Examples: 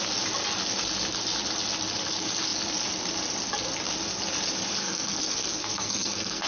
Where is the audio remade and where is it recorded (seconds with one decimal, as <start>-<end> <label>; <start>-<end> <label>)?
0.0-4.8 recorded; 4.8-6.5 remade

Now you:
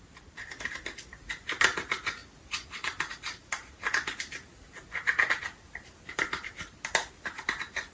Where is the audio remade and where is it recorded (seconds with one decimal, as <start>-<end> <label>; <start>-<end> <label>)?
0.0-7.9 recorded

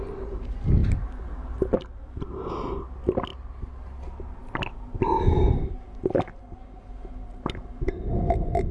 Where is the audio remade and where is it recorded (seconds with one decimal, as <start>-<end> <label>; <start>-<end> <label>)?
0.0-8.7 recorded

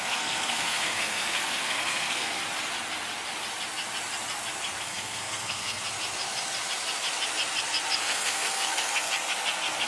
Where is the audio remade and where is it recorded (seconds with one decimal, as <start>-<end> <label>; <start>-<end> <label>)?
0.0-2.4 remade; 2.4-4.8 recorded; 4.8-5.8 remade; 5.8-8.0 recorded; 8.0-9.1 remade; 9.1-9.9 recorded

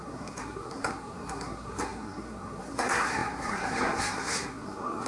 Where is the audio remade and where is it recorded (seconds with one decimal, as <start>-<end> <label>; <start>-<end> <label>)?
0.0-5.1 remade